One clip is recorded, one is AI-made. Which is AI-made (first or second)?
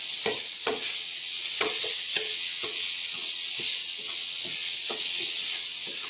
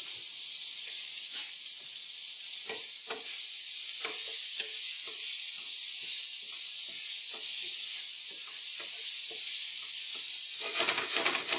first